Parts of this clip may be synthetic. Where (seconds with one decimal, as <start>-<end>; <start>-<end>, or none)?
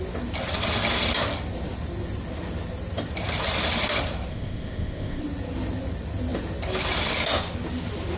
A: 4.3-5.2